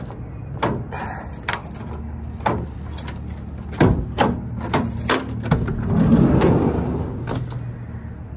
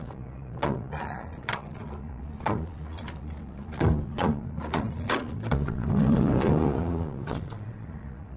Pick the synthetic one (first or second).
second